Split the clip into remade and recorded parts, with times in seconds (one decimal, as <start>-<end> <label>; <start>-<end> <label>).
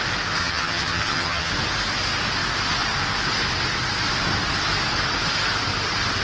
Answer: 0.0-0.4 recorded; 0.4-1.5 remade; 1.5-6.2 recorded